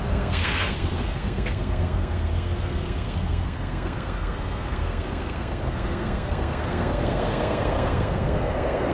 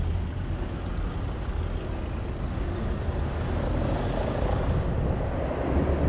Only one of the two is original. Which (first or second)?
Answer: second